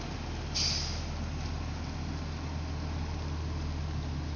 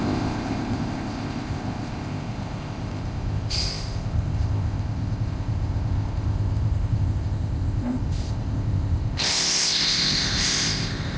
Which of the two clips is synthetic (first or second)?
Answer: second